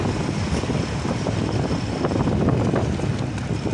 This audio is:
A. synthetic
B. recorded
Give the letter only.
B